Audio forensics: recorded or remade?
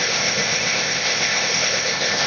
remade